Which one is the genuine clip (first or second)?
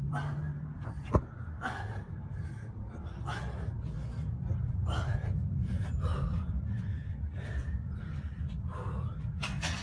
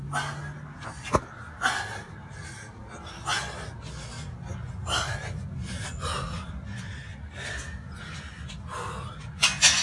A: second